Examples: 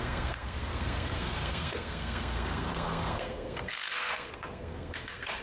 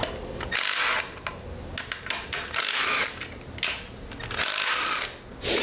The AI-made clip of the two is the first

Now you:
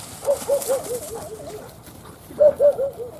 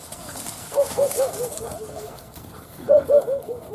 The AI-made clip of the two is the second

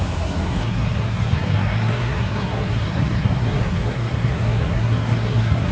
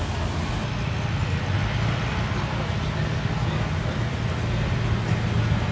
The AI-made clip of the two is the first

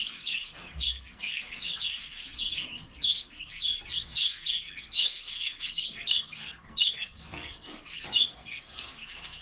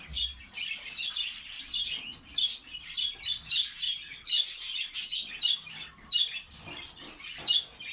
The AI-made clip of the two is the first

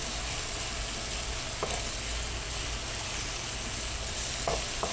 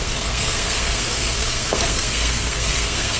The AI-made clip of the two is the second